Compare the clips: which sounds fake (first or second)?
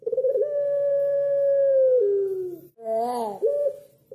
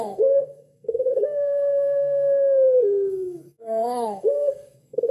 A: second